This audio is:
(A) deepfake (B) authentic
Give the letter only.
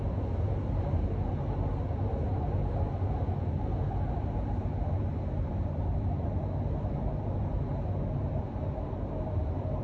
B